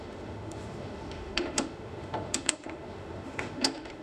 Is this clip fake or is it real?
fake